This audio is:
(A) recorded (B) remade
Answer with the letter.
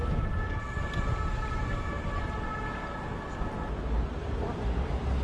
A